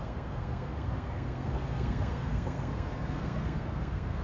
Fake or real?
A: fake